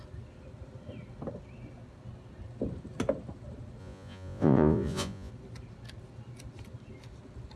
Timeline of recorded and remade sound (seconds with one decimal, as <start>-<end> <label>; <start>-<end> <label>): 0.0-3.8 recorded; 3.8-5.3 remade; 5.3-7.6 recorded